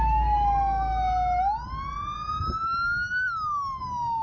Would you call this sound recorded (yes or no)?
yes